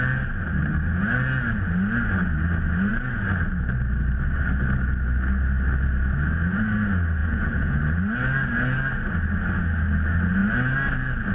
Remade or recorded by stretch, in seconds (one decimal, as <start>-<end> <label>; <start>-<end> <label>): 0.0-7.2 recorded; 7.2-7.8 remade; 7.8-11.3 recorded